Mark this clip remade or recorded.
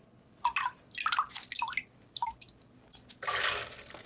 recorded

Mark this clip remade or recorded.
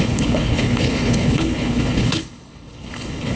remade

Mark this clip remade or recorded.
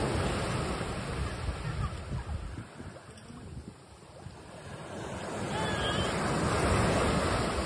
recorded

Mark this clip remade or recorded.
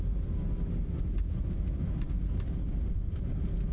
recorded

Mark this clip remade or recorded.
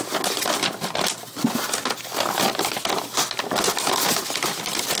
recorded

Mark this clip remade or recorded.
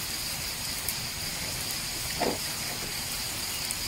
recorded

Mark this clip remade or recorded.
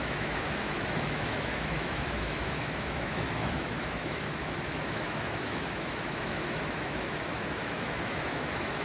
remade